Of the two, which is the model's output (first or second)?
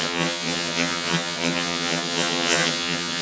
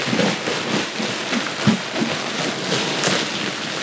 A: first